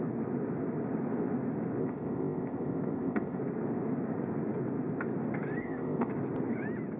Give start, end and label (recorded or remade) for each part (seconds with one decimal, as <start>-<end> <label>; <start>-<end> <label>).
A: 0.0-1.8 recorded; 1.8-3.4 remade; 3.4-5.6 recorded; 5.6-6.1 remade; 6.1-7.0 recorded